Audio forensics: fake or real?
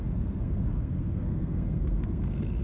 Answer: fake